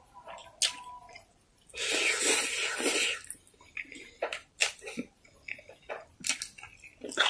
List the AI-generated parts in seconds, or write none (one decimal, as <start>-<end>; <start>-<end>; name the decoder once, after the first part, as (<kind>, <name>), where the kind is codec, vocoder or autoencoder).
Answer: none